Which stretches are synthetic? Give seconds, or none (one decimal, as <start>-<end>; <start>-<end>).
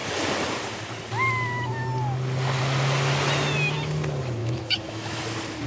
4.4-5.2